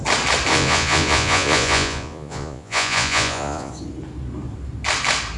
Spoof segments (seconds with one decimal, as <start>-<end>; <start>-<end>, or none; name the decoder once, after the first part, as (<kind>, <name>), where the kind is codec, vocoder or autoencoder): 0.5-3.7 (vocoder, Vocos)